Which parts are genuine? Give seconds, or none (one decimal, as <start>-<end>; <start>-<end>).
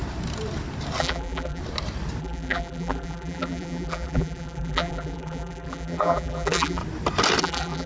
0.0-1.0; 1.6-2.2; 6.8-7.4